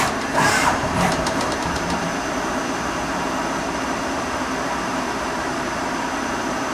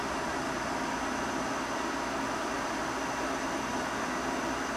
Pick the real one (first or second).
second